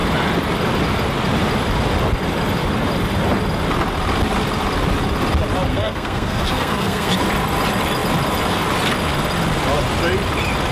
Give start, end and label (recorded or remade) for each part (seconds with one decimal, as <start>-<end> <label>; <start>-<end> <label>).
0.0-5.7 recorded; 5.7-7.1 remade; 7.1-10.7 recorded